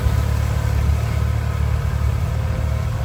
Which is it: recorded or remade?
recorded